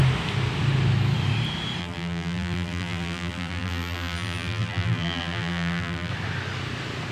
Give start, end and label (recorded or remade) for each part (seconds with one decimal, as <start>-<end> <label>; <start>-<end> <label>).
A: 0.0-1.8 recorded; 1.8-6.1 remade; 6.1-7.1 recorded